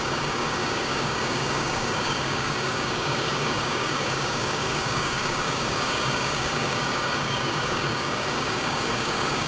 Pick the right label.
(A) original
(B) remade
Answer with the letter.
B